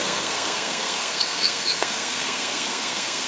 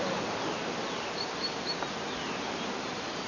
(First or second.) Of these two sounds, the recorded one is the second